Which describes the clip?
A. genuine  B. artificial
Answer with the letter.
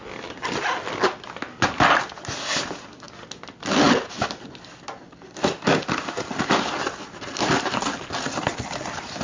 A